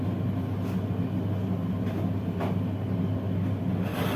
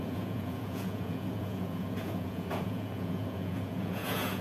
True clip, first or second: first